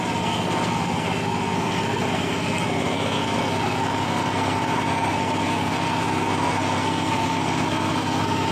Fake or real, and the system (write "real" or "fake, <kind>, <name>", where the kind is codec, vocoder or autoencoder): fake, codec, SNAC